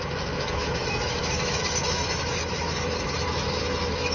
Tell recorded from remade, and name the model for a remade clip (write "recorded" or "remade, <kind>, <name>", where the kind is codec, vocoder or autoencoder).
remade, autoencoder, DAC-VAE